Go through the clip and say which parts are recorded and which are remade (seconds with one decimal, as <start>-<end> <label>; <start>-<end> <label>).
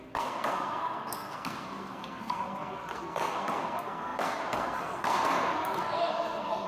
0.0-6.7 remade